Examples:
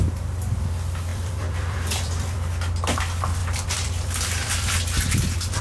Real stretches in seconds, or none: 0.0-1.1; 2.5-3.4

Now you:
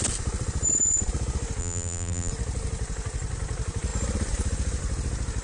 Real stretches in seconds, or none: 0.0-1.6; 2.3-5.4

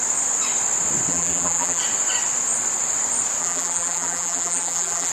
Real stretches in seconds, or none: 0.0-1.1; 1.8-3.4